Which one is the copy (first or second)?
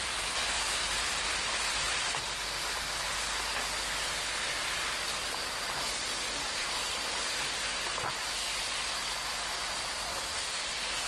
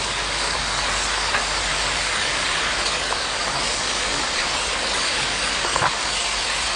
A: second